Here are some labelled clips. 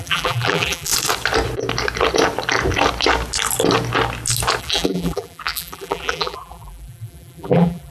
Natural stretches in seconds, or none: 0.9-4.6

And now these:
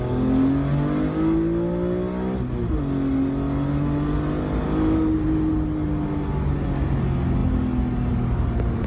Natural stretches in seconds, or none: 0.0-8.9

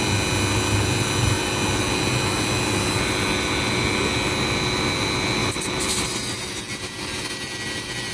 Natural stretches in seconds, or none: 0.0-5.4; 6.6-8.1